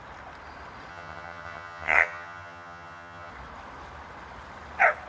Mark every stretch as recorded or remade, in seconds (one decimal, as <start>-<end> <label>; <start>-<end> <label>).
0.0-0.9 recorded; 0.9-3.3 remade; 3.3-5.1 recorded